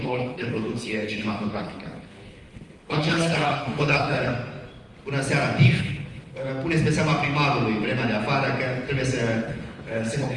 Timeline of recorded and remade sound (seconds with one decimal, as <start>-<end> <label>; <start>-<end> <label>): 0.0-4.3 remade; 4.3-5.8 recorded; 5.8-6.5 remade; 6.5-9.4 recorded; 9.4-10.4 remade